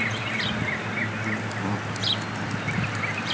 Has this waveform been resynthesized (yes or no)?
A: no